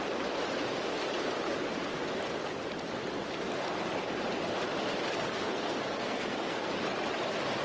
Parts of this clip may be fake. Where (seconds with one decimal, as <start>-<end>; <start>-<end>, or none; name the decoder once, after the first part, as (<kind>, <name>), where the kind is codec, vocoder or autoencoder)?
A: 5.3-6.7 (codec, SNAC)